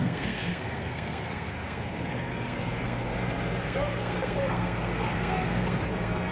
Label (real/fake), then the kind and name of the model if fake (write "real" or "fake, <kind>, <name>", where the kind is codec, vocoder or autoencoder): fake, codec, SNAC